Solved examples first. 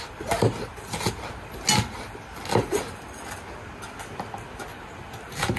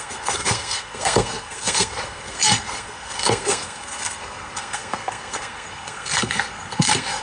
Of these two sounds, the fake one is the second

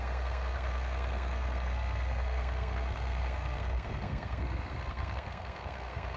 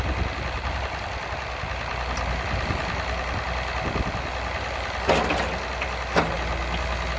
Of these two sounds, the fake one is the first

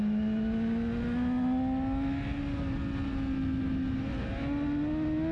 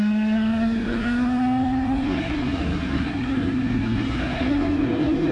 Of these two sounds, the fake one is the second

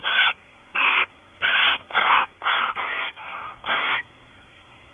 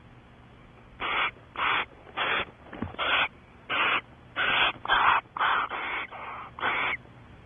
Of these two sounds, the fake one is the first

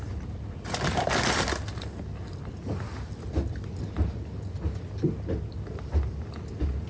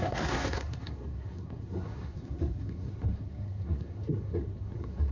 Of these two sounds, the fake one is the second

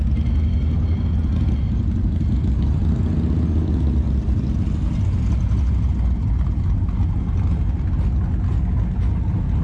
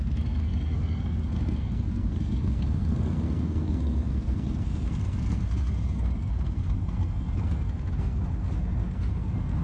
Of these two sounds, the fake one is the second